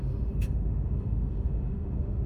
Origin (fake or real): fake